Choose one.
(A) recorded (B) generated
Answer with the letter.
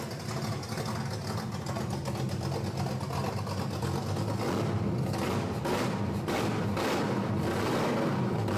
A